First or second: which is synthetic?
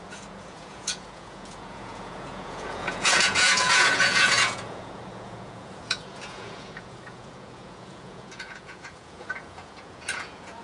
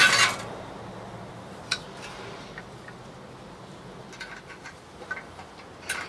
first